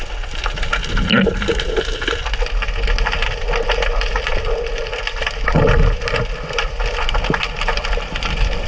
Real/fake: real